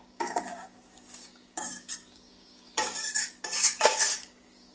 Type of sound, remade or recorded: remade